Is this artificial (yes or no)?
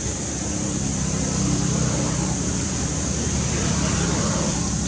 yes